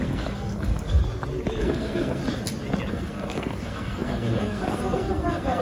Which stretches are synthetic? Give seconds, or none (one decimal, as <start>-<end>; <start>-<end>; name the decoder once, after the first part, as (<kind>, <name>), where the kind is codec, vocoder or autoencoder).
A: 0.0-1.0 (codec, SNAC); 1.6-2.2; 2.9-5.6